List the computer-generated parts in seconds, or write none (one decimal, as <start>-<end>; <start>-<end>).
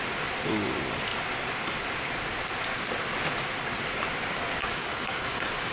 4.6-5.7